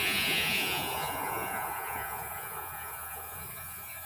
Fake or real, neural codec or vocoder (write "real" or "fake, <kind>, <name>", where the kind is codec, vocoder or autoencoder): fake, vocoder, Vocos